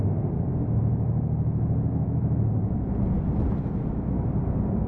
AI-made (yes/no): no